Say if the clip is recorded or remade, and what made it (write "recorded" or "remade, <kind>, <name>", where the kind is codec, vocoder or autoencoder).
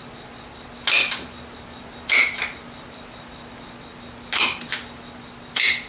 recorded